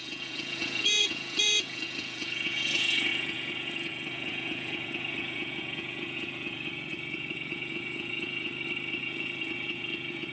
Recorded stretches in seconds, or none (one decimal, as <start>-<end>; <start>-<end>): 8.5-9.0